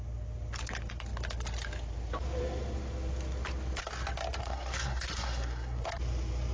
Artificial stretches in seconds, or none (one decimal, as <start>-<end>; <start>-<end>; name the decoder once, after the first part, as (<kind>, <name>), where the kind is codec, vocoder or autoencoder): 4.4-5.9 (codec, SNAC)